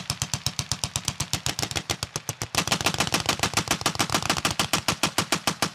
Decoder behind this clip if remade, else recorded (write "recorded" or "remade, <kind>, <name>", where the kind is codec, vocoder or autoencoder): recorded